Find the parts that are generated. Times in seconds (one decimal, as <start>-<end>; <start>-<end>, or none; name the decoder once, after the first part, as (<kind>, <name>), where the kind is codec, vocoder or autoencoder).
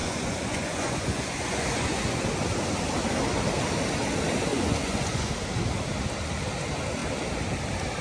0.0-2.2 (vocoder, Vocos); 4.5-5.3